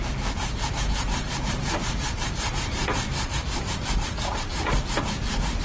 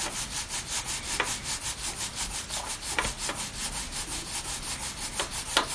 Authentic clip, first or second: second